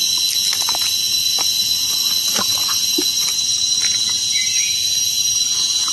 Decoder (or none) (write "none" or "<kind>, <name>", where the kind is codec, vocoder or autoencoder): none